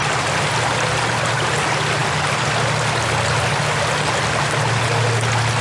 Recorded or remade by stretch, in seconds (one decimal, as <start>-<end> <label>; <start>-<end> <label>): 0.0-5.6 recorded